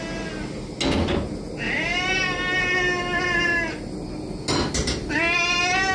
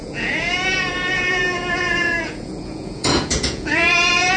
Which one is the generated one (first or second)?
second